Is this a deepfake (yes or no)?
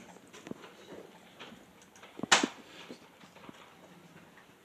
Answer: no